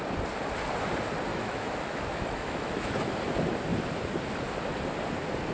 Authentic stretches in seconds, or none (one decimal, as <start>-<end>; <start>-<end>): 0.0-1.3; 3.1-5.5